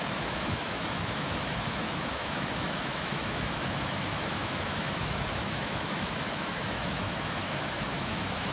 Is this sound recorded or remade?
remade